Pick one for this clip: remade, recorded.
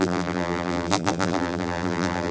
remade